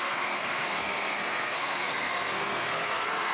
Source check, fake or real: fake